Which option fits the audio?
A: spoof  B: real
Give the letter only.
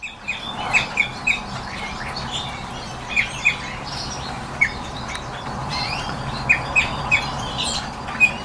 A